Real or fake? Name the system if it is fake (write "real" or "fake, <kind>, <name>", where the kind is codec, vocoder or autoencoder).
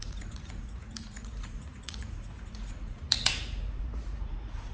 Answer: fake, vocoder, Vocos